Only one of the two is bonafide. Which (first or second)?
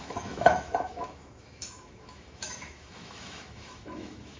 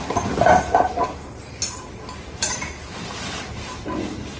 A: second